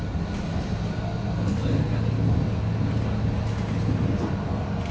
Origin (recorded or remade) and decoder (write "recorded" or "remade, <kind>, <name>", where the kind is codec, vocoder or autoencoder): recorded